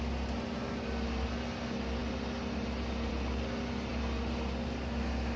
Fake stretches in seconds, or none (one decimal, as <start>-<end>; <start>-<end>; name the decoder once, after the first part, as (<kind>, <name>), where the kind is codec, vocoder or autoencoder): none